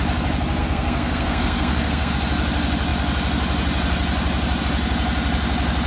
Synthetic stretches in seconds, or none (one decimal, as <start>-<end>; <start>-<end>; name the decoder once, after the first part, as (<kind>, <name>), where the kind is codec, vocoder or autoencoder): 0.6-2.1 (codec, SNAC)